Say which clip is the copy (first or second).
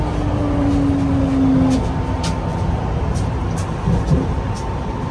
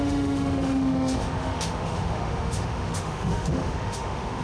second